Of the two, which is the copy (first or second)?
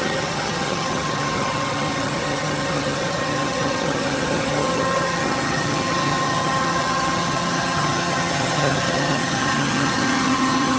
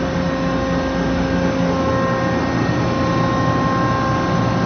first